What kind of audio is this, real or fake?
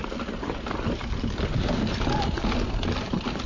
real